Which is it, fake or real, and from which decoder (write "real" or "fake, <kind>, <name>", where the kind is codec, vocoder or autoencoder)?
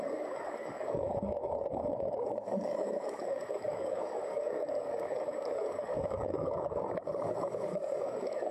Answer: fake, codec, DAC